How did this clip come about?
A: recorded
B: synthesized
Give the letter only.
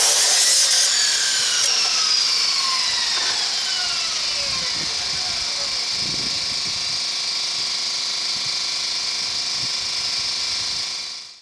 A